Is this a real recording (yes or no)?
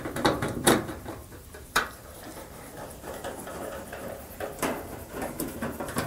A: no